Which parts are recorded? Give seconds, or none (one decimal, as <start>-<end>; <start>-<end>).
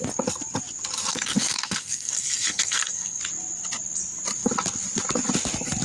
0.0-1.1; 3.2-5.8